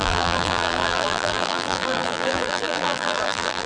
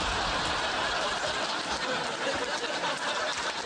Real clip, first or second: second